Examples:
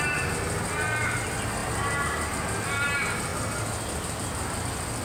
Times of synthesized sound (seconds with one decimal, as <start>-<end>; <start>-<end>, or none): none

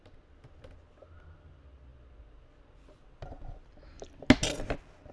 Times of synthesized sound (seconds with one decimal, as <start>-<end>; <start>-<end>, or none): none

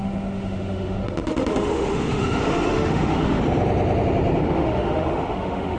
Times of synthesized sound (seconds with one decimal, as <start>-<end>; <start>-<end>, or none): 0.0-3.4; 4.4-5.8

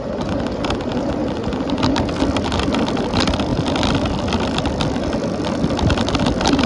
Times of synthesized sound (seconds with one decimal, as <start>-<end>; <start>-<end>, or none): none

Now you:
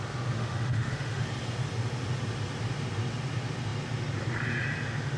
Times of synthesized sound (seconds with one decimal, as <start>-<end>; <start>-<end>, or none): 0.4-1.2